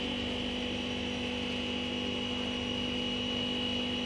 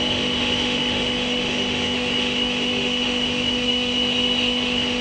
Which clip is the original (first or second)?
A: first